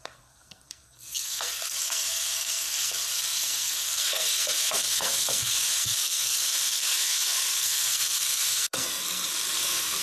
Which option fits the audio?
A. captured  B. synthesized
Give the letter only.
B